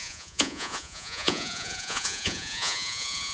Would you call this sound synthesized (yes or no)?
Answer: yes